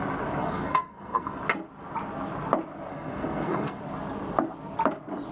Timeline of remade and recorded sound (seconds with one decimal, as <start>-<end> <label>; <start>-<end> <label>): 0.0-0.4 recorded; 0.4-1.3 remade; 1.3-2.9 recorded; 2.9-3.8 remade; 3.8-5.3 recorded